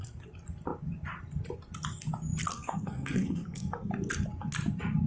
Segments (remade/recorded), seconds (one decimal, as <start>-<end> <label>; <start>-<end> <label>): 0.0-2.5 recorded; 2.5-3.9 remade; 3.9-5.1 recorded